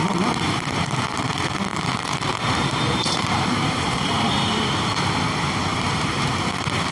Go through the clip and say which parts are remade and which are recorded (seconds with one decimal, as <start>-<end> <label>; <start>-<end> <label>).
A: 0.0-1.7 recorded; 1.7-4.7 remade; 4.7-5.7 recorded; 5.7-6.3 remade; 6.3-6.9 recorded